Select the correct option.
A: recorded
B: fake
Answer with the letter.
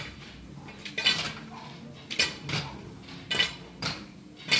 A